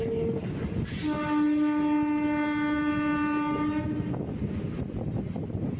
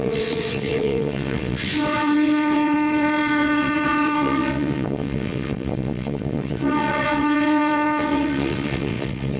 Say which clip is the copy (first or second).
second